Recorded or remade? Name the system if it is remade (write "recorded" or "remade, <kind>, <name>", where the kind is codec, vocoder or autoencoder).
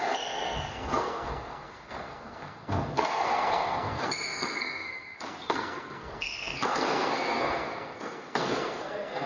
remade, codec, SNAC